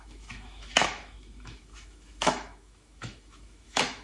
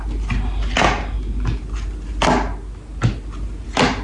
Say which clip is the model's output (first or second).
first